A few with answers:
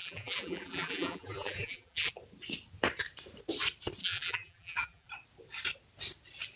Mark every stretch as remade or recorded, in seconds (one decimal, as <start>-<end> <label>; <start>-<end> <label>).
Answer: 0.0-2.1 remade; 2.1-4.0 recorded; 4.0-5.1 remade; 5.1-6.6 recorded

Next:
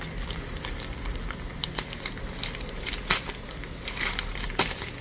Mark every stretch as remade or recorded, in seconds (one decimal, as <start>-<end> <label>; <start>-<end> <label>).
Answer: 0.0-1.6 recorded; 1.6-4.6 remade; 4.6-5.0 recorded

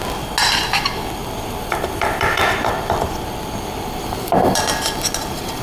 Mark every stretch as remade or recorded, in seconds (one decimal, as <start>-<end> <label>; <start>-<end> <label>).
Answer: 0.0-1.2 recorded; 1.2-4.6 remade; 4.6-5.6 recorded

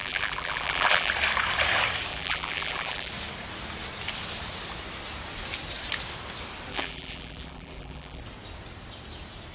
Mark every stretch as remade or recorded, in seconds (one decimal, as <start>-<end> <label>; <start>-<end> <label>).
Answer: 0.0-1.1 remade; 1.1-2.1 recorded; 2.1-3.1 remade; 3.1-6.7 recorded; 6.7-8.2 remade; 8.2-9.5 recorded

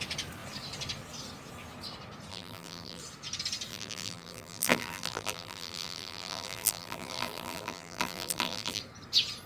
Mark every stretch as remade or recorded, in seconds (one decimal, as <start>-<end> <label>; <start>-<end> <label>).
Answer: 0.0-2.3 recorded; 2.3-3.0 remade; 3.0-3.7 recorded; 3.7-8.8 remade; 8.8-9.5 recorded